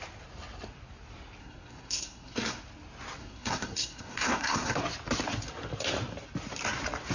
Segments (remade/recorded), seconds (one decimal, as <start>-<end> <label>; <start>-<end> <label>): 0.0-1.4 recorded; 1.4-2.6 remade; 2.6-3.2 recorded; 3.2-4.8 remade; 4.8-7.1 recorded